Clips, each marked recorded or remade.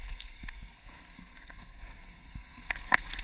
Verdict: remade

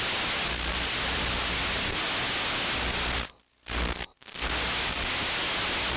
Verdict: recorded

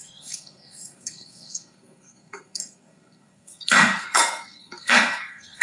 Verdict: remade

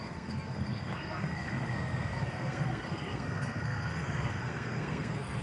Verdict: remade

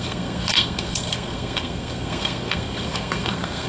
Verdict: remade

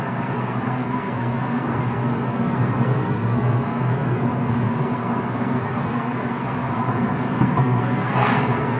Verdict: remade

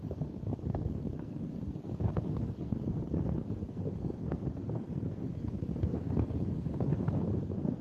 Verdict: remade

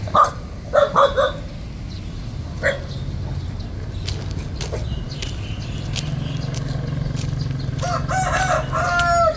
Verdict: recorded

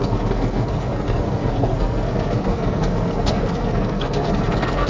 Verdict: remade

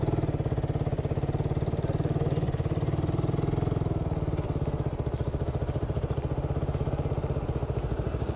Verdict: recorded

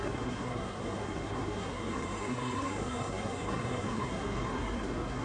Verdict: remade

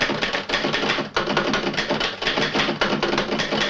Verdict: recorded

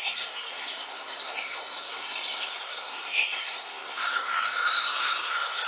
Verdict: remade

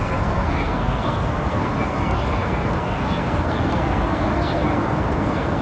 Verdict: remade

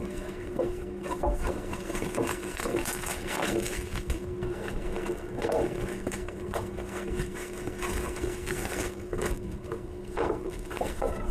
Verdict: remade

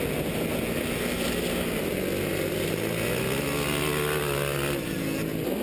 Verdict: recorded